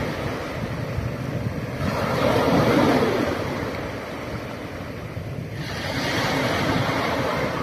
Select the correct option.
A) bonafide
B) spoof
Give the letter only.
A